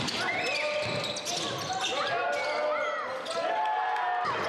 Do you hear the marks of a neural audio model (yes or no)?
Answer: no